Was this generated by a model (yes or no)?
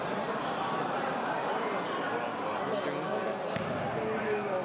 no